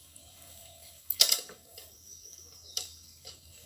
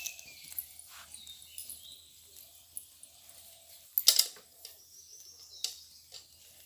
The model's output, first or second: first